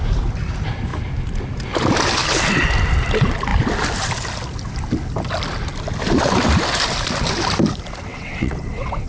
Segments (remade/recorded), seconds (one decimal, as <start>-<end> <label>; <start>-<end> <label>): 0.0-8.1 recorded; 8.1-9.1 remade

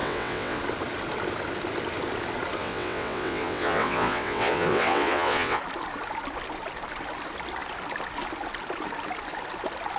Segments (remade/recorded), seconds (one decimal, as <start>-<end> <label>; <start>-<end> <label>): 0.0-0.6 remade; 0.6-2.6 recorded; 2.6-5.6 remade; 5.6-10.0 recorded